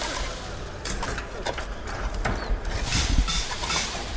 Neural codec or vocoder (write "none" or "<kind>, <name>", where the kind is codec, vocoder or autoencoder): none